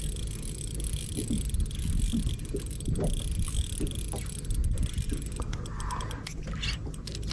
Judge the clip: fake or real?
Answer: real